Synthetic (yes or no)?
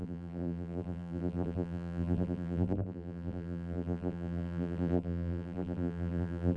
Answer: yes